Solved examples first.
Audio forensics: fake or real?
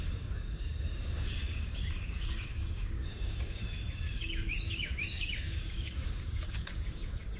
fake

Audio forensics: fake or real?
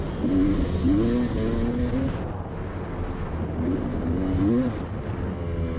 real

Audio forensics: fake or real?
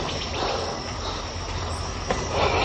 real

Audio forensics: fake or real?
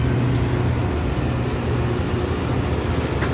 real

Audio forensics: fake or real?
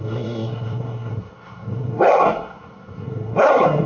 fake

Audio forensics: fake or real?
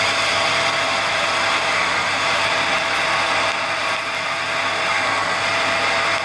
real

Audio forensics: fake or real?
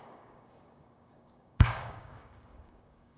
fake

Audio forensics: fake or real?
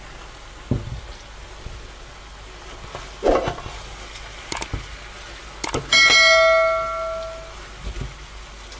real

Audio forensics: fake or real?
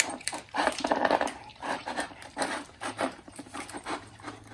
fake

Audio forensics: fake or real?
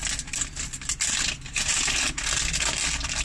real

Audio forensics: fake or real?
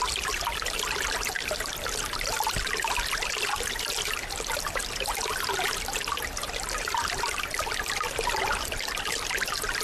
real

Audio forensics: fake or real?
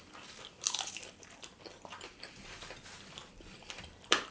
fake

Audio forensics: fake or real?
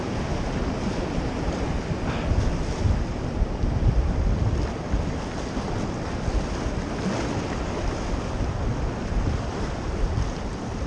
real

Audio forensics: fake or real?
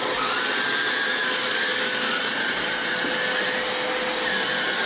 real